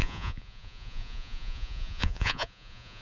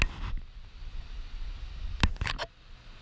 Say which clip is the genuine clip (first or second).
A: second